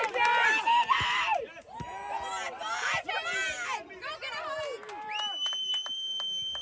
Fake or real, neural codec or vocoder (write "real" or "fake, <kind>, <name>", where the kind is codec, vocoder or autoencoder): real